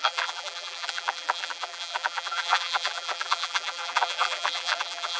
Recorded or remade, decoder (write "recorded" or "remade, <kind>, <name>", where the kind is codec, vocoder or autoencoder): remade, vocoder, BigVGAN v2